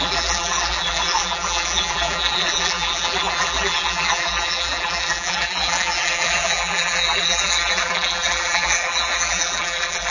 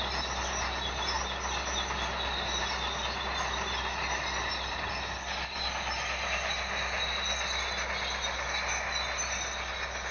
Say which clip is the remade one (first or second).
first